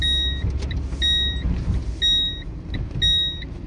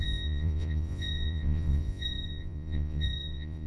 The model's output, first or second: second